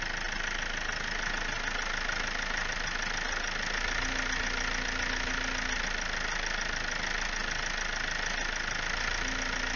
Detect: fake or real real